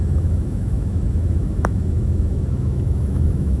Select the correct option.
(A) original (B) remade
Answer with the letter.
B